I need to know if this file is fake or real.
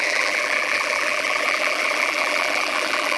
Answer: fake